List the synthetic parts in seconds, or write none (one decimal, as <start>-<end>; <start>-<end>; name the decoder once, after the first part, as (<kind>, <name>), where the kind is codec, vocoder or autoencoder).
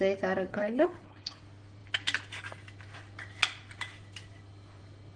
0.5-1.4 (codec, HILCodec)